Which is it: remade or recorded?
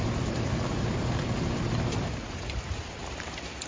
remade